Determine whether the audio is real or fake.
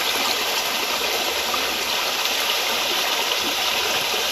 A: fake